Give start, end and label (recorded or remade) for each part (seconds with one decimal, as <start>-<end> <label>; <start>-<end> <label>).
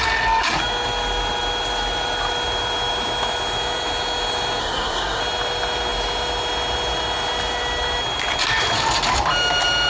0.0-4.6 recorded; 4.6-5.2 remade; 5.2-9.9 recorded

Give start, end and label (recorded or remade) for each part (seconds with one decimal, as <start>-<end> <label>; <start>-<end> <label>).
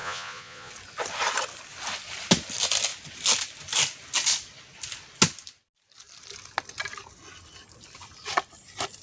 0.0-0.7 remade; 0.7-9.0 recorded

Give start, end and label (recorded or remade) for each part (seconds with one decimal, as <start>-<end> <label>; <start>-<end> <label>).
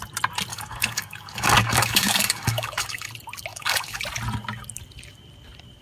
0.0-0.5 recorded; 0.5-3.1 remade; 3.1-3.5 recorded; 3.5-4.0 remade; 4.0-5.8 recorded